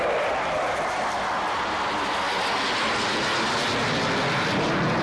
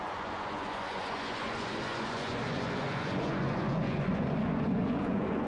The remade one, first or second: second